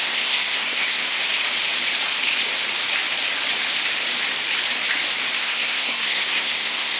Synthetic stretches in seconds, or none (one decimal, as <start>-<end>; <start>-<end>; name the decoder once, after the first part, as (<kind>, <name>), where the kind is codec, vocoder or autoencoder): 0.0-1.2 (codec, SNAC); 5.4-7.0